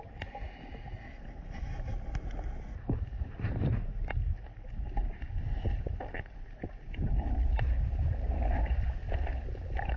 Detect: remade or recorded recorded